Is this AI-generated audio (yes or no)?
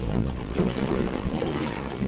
yes